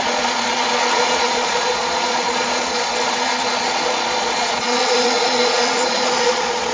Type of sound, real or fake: fake